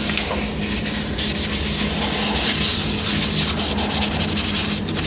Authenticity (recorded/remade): recorded